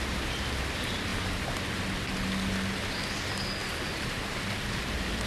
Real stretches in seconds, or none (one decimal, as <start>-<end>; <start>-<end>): 0.0-5.3

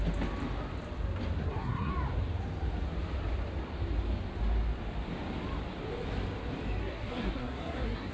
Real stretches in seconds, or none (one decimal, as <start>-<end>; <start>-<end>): 0.0-1.4; 1.9-6.8

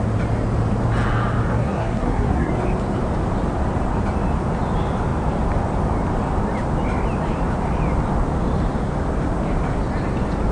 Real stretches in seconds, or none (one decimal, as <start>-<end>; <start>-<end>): 0.0-1.5; 2.5-10.5

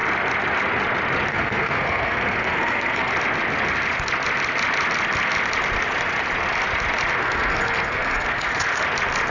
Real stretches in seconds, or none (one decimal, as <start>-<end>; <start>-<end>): 0.0-1.3; 3.1-7.2; 8.5-9.3

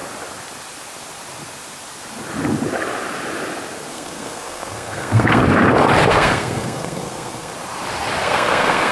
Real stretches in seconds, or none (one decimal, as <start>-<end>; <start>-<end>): 0.0-3.9; 5.4-6.1; 7.5-8.2